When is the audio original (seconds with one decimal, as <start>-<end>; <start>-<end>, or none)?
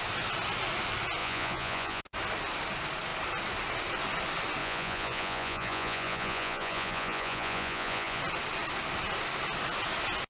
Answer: 0.0-1.2; 2.0-4.6; 8.2-10.3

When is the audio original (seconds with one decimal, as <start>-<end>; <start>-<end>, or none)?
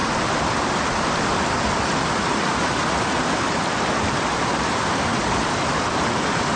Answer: 0.0-6.6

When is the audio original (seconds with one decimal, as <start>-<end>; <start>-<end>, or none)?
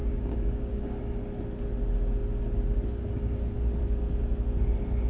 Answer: 1.0-5.1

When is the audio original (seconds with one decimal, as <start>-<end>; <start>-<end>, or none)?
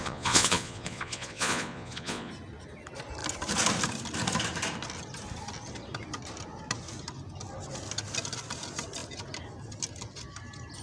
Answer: 2.3-10.8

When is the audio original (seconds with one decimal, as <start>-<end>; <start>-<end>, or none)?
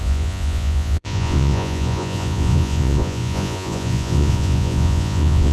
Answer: none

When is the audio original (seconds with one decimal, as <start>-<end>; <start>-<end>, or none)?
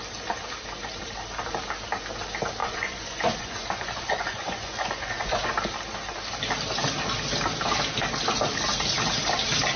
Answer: 0.0-2.6; 5.5-9.8